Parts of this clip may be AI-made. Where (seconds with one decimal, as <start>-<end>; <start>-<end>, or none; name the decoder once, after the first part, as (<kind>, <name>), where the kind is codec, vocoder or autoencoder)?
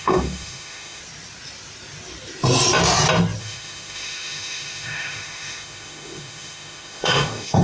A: 0.0-1.0 (autoencoder, DAC-VAE); 3.4-7.6